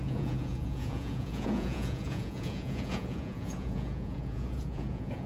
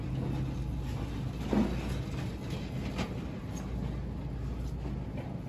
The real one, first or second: second